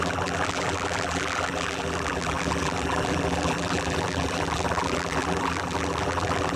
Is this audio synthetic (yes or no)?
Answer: yes